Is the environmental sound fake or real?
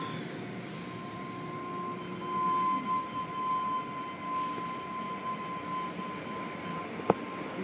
real